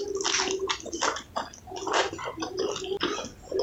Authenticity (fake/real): real